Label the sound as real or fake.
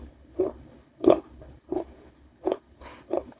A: fake